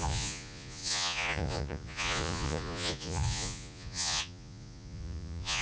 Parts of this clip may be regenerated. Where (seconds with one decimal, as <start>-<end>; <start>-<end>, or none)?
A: 0.0-5.6